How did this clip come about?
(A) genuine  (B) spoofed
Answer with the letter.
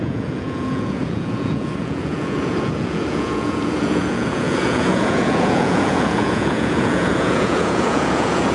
B